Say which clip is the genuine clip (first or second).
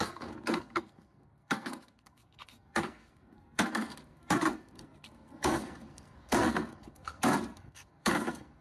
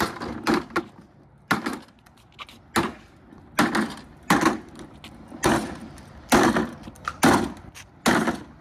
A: second